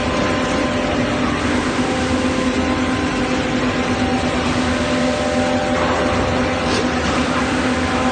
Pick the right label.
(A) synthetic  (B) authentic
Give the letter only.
B